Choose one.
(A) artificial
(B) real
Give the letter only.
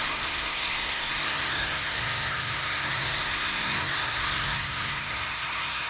A